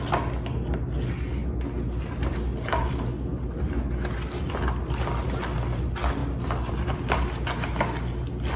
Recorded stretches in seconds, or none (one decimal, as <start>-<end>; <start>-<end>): 0.0-8.6